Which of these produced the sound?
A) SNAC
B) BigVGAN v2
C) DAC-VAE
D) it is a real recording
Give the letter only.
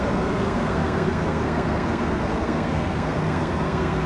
A